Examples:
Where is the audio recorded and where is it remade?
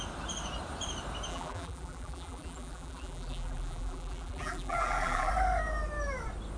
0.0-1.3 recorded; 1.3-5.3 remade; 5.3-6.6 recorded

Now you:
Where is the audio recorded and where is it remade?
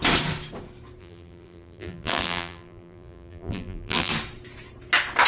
0.0-1.0 recorded; 1.0-4.1 remade; 4.1-5.3 recorded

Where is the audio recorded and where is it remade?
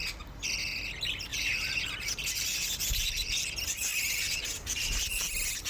0.0-1.3 recorded; 1.3-2.7 remade; 2.7-3.9 recorded; 3.9-4.9 remade; 4.9-5.7 recorded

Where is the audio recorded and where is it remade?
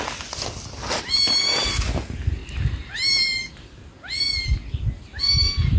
0.0-5.8 recorded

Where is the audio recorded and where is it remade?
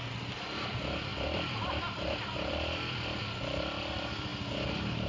0.0-1.1 recorded; 1.1-3.2 remade; 3.2-5.1 recorded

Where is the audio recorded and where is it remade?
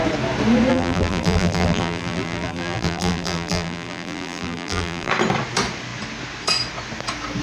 0.0-0.7 recorded; 0.7-5.1 remade; 5.1-7.4 recorded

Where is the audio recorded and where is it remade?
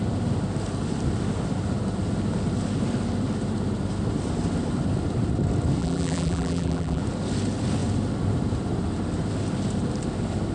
0.0-5.8 recorded; 5.8-7.0 remade; 7.0-10.5 recorded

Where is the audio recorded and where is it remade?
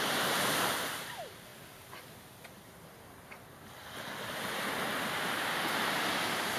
0.0-1.5 remade; 1.5-5.1 recorded; 5.1-6.6 remade